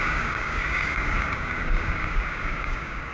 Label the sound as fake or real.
fake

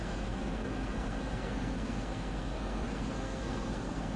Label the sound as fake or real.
fake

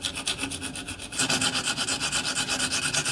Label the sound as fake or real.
real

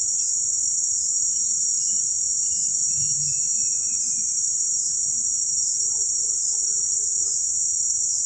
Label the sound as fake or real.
fake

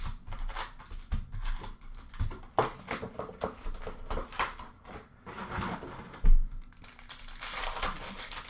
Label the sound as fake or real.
real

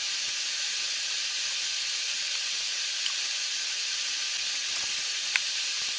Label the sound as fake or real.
real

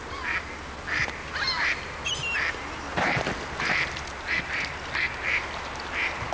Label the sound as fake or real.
real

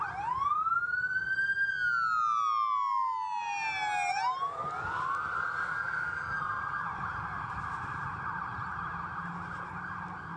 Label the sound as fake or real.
real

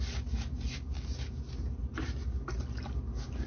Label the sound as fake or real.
real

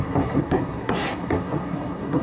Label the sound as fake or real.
fake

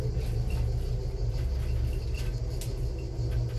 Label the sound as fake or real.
real